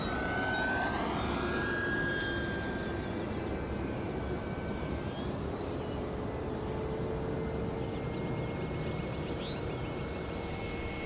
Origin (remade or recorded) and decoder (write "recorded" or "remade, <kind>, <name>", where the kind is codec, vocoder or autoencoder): recorded